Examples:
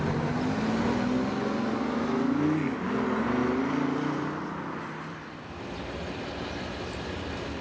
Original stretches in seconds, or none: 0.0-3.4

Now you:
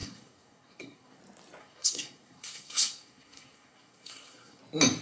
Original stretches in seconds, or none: 1.2-1.6; 4.6-5.0

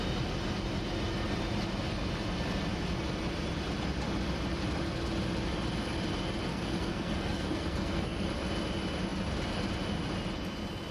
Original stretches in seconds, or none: 0.0-6.5; 8.3-10.9